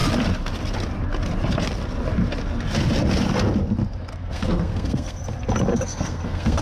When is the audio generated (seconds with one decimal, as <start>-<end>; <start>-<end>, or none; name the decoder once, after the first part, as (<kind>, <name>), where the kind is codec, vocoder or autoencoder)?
4.1-5.2 (codec, SNAC); 5.7-6.6